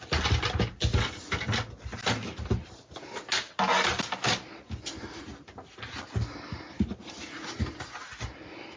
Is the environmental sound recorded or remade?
recorded